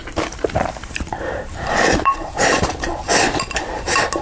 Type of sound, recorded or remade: remade